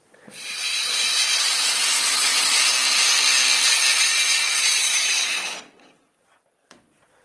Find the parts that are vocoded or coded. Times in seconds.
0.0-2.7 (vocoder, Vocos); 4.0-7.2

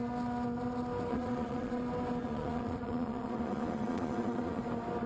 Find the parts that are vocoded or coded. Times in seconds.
1.1-1.8 (vocoder, Vocos); 2.2-4.6

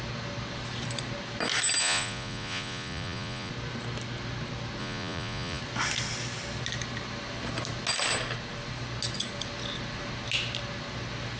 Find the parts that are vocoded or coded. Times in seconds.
1.8-3.5 (vocoder, Vocos); 4.8-5.6

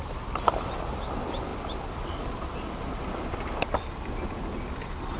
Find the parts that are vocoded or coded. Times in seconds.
none

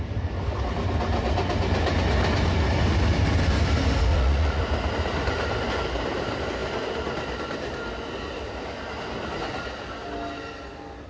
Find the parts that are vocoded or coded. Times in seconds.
4.1-4.6 (vocoder, Vocos)